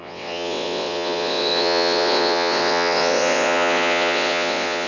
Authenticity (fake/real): fake